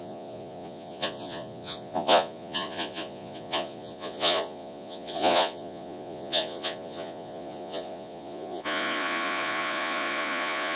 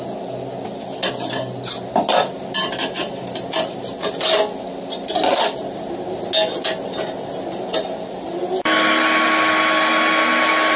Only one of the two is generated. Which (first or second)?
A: first